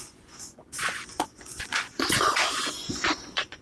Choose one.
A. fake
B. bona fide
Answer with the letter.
A